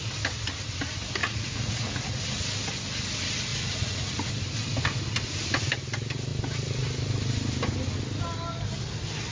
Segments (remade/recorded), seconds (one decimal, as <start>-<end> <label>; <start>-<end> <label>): 0.0-1.2 recorded; 1.2-2.2 remade; 2.2-3.5 recorded; 3.5-4.3 remade; 4.3-9.3 recorded